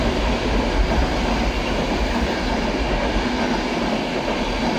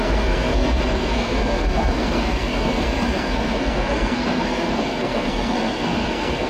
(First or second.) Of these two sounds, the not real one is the second